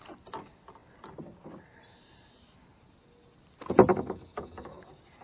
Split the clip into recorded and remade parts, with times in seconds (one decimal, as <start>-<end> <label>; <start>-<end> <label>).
0.0-3.9 recorded; 3.9-4.8 remade; 4.8-5.2 recorded

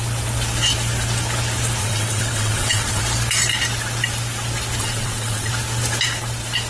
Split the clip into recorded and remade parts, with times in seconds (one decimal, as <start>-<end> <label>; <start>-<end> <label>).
0.0-1.8 recorded; 1.8-3.0 remade; 3.0-4.8 recorded; 4.8-5.5 remade; 5.5-6.7 recorded

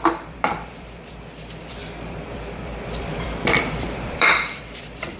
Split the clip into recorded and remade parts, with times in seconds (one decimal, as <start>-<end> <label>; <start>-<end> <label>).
0.0-5.2 remade

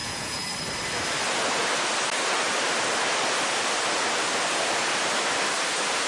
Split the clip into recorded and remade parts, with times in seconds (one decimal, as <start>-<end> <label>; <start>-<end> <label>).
0.0-0.5 remade; 0.5-6.1 recorded

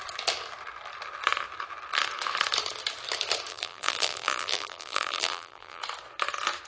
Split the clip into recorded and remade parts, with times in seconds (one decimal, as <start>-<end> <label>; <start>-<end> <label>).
0.0-3.5 recorded; 3.5-5.8 remade; 5.8-6.7 recorded

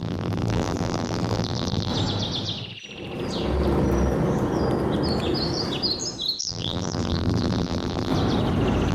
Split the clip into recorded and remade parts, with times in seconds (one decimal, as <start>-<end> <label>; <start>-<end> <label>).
0.0-1.9 remade; 1.9-6.4 recorded; 6.4-8.1 remade; 8.1-8.9 recorded

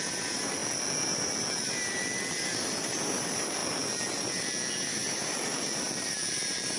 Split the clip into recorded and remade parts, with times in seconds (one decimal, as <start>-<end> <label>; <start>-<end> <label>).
0.0-6.8 recorded